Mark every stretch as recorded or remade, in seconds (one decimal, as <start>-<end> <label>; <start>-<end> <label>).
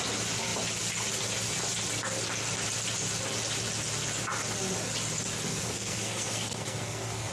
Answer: 0.0-5.5 recorded; 5.5-7.3 remade